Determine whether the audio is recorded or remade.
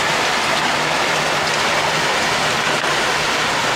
recorded